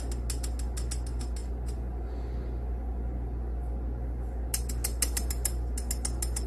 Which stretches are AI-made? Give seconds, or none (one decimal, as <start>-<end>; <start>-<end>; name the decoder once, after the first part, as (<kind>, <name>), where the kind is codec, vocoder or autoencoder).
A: none